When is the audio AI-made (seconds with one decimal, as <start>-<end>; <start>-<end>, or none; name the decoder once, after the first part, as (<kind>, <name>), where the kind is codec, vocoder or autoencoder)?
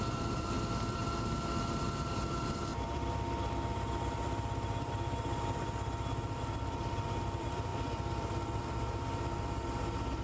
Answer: 0.0-1.0 (vocoder, BigVGAN v2); 2.1-10.2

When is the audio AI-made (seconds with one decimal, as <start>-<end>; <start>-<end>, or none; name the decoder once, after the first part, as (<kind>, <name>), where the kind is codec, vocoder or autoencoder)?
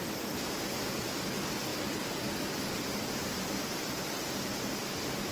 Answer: none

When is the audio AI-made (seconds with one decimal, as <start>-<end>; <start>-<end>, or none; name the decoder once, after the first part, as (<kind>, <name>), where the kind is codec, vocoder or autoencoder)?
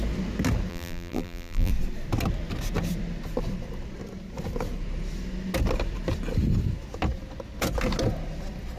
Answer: 0.7-1.7 (vocoder, BigVGAN v2)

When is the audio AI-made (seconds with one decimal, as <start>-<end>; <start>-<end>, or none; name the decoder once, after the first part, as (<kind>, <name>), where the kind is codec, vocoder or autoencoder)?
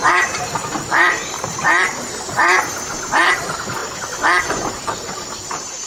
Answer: 0.0-3.8 (vocoder, BigVGAN v2); 4.4-5.9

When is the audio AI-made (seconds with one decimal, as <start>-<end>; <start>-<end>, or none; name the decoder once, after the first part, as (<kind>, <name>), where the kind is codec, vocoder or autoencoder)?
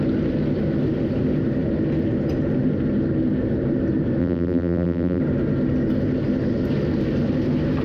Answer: 4.2-5.2 (vocoder, BigVGAN v2)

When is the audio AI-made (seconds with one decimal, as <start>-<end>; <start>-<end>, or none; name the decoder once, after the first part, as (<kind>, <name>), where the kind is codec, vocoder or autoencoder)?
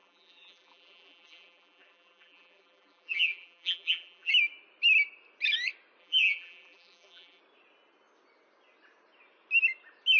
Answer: 0.0-4.3 (vocoder, BigVGAN v2); 6.0-7.4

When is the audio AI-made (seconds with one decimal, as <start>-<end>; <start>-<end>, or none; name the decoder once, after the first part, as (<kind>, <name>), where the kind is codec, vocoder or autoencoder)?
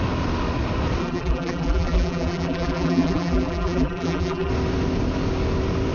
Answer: 1.0-4.5 (vocoder, BigVGAN v2)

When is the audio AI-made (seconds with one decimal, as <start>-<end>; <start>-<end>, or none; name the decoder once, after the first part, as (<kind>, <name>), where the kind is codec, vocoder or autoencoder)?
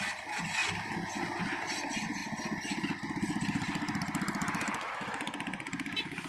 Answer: 0.0-6.3 (vocoder, BigVGAN v2)